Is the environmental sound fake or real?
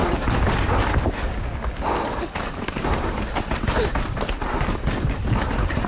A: real